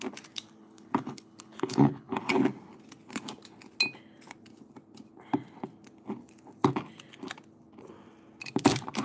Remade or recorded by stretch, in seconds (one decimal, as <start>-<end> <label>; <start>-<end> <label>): 0.0-0.6 recorded; 0.6-2.4 remade; 2.4-9.0 recorded